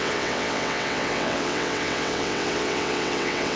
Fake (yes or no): yes